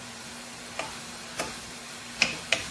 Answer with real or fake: fake